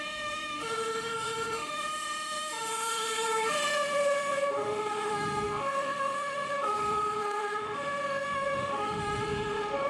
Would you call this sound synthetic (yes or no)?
yes